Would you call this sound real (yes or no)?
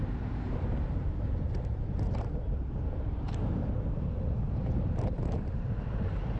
no